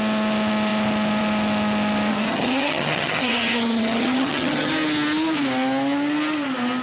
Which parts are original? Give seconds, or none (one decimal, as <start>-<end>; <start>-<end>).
0.0-2.1; 4.7-6.8